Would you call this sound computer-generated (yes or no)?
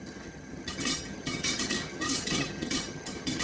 yes